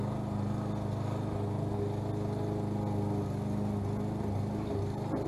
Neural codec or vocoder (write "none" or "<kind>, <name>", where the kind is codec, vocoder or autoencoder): none